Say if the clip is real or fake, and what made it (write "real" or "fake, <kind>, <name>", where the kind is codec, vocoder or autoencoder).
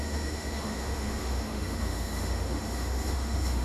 fake, autoencoder, DAC-VAE